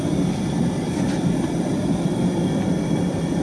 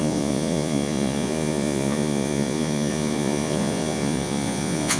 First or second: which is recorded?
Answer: first